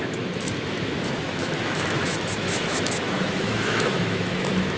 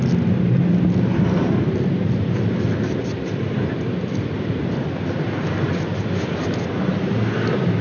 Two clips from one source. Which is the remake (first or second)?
first